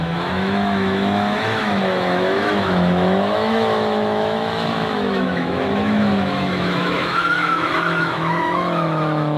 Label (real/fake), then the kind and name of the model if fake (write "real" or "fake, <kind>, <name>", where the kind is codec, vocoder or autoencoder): fake, autoencoder, DAC-VAE